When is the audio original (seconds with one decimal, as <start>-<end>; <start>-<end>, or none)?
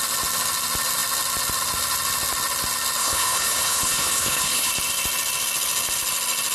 0.0-3.0; 4.7-6.5